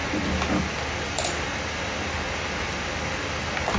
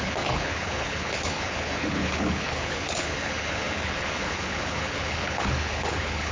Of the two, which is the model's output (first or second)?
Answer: second